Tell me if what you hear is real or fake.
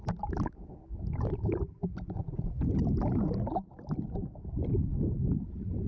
real